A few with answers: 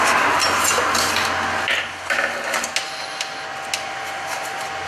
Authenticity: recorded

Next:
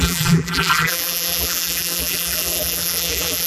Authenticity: remade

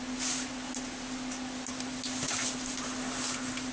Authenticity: recorded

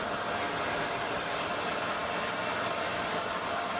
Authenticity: recorded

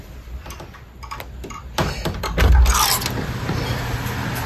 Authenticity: recorded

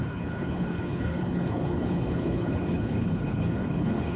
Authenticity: remade